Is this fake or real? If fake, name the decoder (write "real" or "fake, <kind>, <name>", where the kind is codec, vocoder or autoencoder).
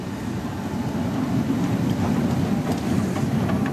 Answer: real